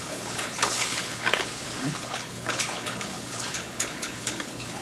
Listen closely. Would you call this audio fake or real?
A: fake